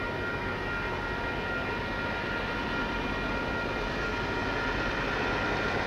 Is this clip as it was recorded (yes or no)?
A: yes